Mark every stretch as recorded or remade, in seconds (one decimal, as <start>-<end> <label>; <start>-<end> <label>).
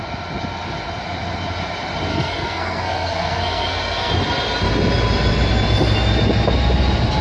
0.0-2.1 recorded; 2.1-4.1 remade; 4.1-7.2 recorded